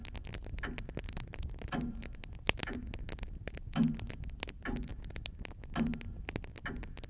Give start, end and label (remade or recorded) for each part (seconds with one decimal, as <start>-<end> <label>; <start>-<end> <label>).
0.0-7.1 recorded